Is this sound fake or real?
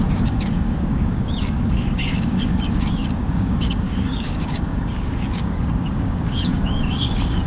fake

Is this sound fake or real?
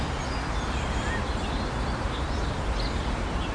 real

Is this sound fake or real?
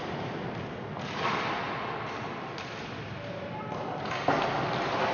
real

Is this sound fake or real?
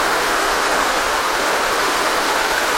fake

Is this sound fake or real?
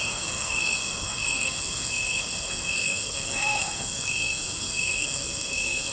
fake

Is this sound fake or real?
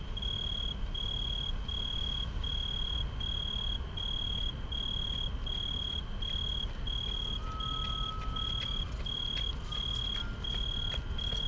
real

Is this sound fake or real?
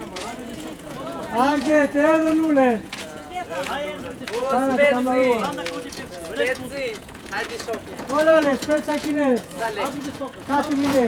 fake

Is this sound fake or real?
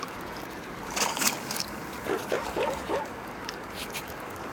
fake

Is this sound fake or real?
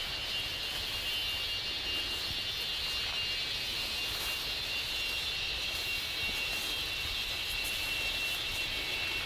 real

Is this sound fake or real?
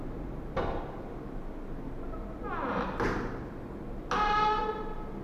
real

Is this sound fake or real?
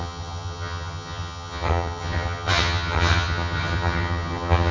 fake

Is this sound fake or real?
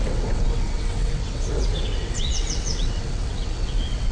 fake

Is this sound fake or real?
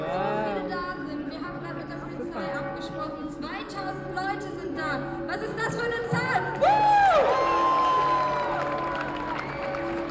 real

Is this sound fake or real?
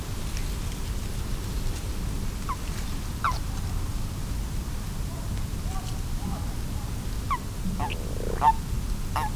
real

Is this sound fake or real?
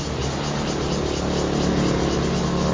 real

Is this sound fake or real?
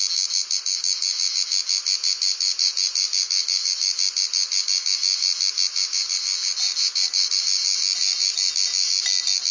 real